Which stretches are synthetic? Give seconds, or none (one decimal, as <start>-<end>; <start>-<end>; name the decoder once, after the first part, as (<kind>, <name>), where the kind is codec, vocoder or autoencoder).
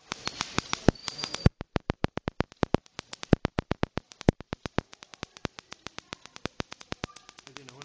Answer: 1.0-2.2 (vocoder, BigVGAN v2)